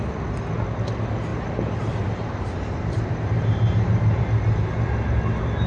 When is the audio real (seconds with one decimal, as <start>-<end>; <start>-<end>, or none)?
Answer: 0.0-1.3; 4.2-5.7